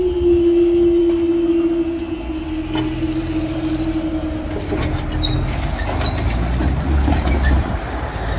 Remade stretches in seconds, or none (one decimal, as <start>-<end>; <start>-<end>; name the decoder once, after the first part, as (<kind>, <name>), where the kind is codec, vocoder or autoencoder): none